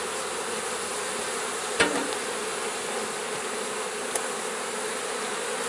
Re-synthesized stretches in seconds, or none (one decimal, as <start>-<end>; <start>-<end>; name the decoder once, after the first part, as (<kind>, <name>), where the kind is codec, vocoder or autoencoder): none